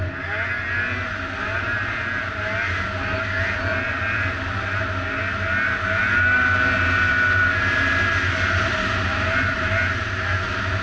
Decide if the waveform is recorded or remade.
recorded